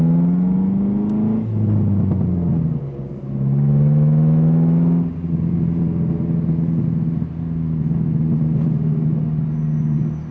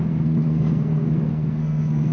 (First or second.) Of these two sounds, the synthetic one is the second